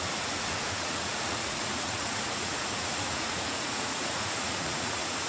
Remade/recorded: remade